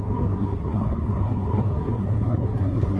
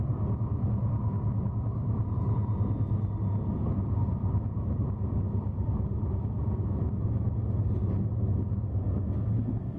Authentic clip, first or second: second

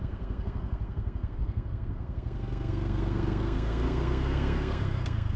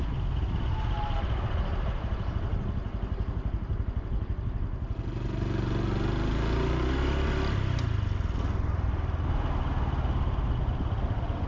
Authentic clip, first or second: second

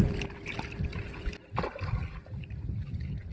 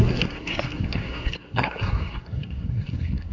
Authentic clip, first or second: first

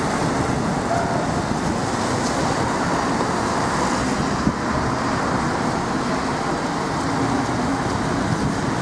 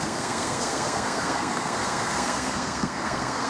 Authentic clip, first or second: first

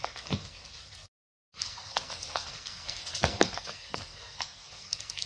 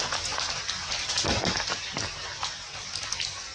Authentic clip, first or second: second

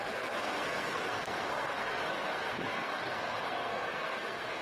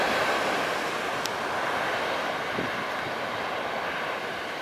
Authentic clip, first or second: second